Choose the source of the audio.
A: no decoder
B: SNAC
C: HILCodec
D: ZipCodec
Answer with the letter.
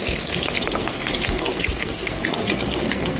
B